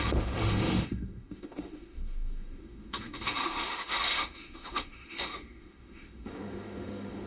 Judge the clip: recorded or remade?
remade